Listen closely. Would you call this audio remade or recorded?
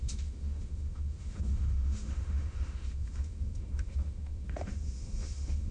remade